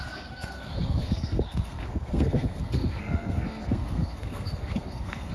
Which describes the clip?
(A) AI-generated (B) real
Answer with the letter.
A